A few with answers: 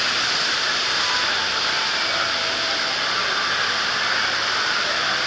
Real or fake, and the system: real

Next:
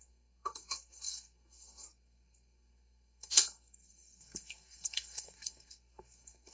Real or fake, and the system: fake, codec, SNAC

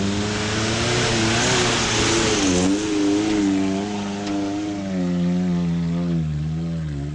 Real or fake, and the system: real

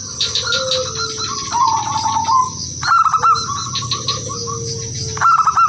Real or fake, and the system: real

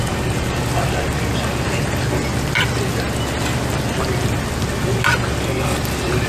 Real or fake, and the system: real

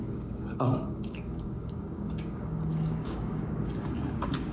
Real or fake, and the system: fake, codec, DAC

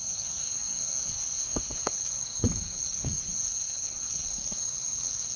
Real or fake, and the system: fake, codec, SNAC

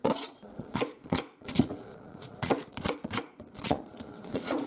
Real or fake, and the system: fake, vocoder, Vocos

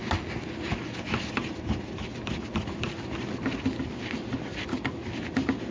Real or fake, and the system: real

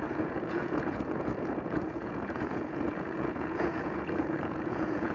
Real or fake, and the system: fake, vocoder, Vocos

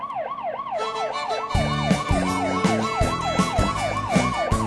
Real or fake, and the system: real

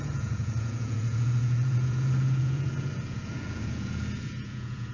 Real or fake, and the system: fake, vocoder, Vocos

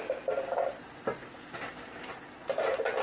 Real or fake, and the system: real